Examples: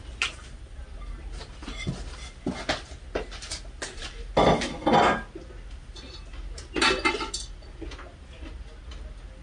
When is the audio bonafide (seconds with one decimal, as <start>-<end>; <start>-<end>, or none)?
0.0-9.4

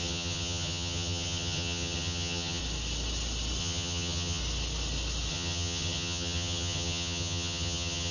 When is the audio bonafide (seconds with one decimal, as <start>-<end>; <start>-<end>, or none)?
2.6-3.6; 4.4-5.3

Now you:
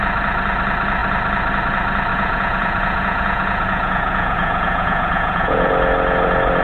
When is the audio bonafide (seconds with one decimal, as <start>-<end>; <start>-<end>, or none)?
0.0-2.1; 5.7-6.6

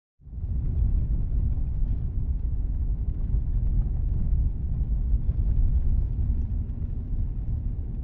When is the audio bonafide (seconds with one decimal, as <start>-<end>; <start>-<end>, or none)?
1.4-5.0